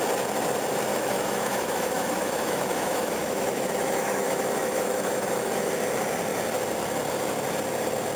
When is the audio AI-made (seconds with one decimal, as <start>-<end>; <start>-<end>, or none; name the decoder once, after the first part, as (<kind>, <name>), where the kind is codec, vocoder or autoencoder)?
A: 0.9-5.7 (autoencoder, DAC-VAE)